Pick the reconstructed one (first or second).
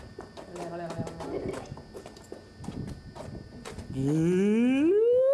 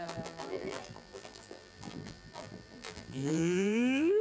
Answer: second